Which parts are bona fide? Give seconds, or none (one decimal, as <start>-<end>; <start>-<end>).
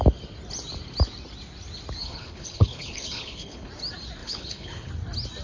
0.0-2.0; 3.7-4.2; 4.9-5.4